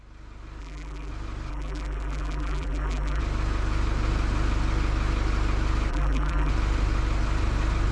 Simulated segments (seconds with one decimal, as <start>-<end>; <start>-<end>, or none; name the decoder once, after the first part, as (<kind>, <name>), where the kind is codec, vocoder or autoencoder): 0.6-1.1 (vocoder, BigVGAN v2); 1.5-3.2; 5.9-6.5